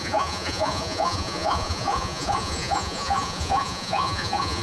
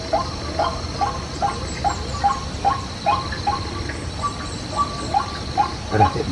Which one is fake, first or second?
first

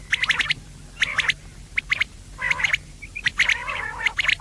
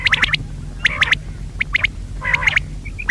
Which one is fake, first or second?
first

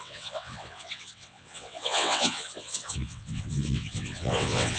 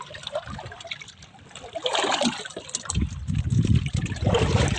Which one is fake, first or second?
first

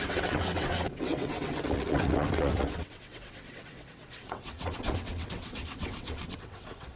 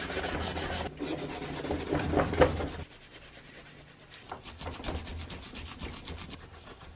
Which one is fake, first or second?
first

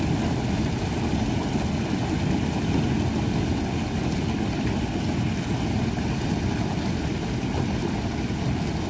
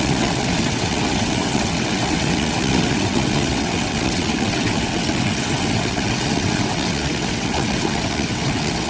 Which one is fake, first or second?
second